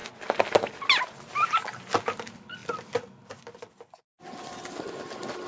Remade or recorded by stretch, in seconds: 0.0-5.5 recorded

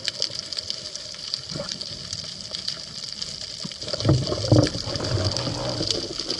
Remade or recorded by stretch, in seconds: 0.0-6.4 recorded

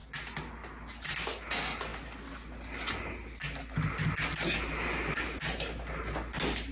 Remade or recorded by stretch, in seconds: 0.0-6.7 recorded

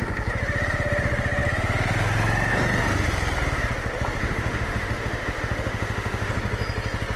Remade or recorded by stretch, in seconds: 0.0-4.2 recorded; 4.2-6.3 remade; 6.3-7.2 recorded

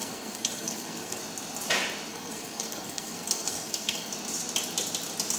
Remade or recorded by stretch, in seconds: 0.0-1.2 remade; 1.2-2.1 recorded; 2.1-4.1 remade; 4.1-5.4 recorded

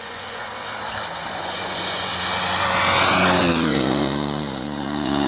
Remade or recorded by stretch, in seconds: 0.0-0.5 remade; 0.5-1.3 recorded; 1.3-2.1 remade; 2.1-3.4 recorded; 3.4-5.3 remade

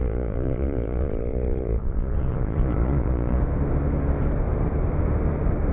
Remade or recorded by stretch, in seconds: 0.0-3.4 remade; 3.4-5.7 recorded